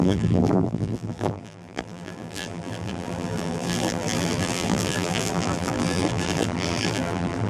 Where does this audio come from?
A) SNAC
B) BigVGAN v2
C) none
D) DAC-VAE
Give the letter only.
B